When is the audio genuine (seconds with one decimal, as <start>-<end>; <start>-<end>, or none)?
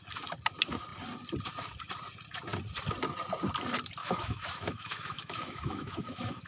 0.0-4.0